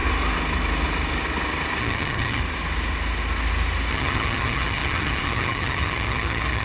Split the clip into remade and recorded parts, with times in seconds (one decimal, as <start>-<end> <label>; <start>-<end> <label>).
0.0-1.8 recorded; 1.8-2.4 remade; 2.4-3.9 recorded; 3.9-6.6 remade